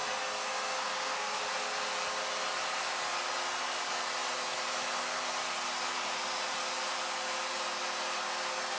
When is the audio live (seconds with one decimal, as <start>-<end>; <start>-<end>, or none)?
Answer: 1.4-8.8